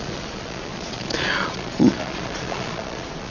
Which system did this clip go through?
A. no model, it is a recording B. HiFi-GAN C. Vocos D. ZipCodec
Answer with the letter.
C